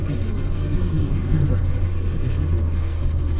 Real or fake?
fake